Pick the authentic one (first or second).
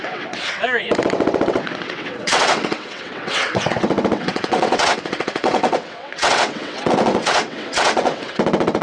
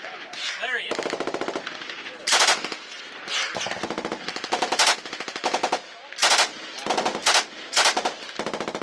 second